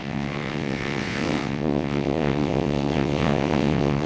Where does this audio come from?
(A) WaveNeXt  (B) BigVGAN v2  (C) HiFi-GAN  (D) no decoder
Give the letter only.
A